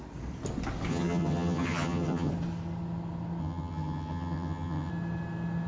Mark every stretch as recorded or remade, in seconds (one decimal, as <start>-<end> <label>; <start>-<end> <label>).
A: 0.0-0.9 recorded; 0.9-2.3 remade; 2.3-3.4 recorded; 3.4-4.9 remade; 4.9-5.7 recorded